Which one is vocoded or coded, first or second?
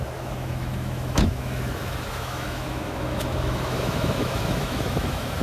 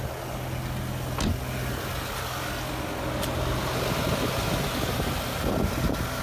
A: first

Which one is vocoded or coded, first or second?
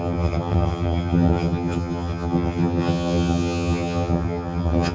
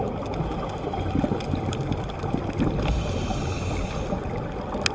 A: first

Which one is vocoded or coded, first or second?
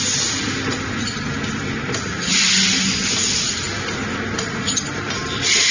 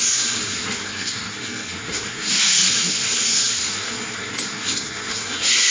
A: second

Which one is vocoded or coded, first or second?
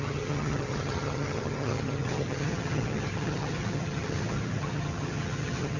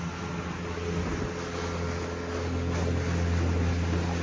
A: first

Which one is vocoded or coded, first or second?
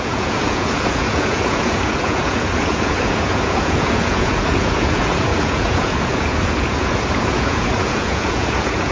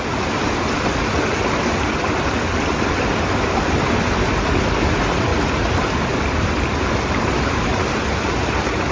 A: first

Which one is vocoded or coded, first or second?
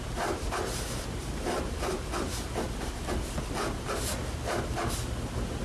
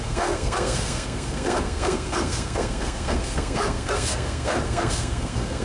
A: second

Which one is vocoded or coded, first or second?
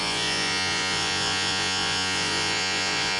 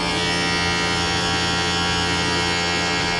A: first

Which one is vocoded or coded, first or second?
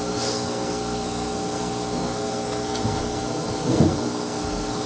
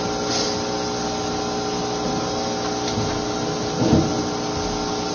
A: first